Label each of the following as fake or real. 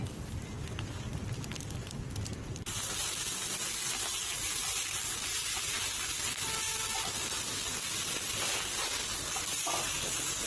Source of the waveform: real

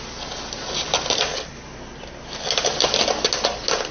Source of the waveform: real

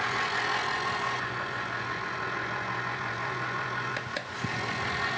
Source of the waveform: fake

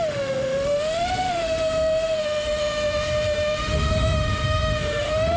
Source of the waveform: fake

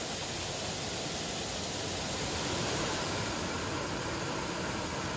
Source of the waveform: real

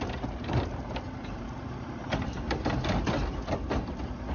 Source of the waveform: real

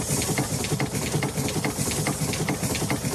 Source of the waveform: real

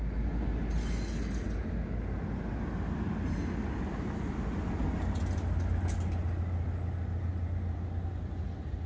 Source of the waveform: real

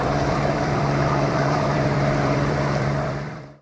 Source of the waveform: fake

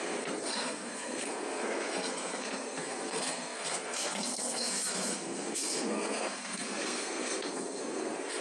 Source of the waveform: fake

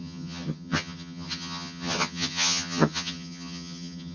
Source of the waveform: fake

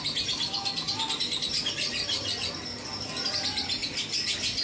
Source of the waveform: real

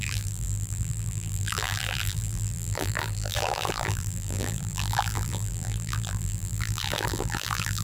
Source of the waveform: fake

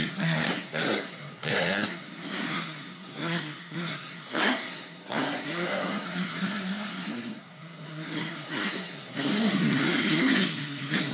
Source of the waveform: fake